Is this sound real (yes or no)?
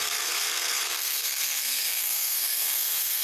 no